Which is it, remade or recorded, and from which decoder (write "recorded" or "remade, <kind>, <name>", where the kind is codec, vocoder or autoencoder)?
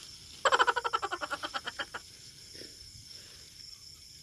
recorded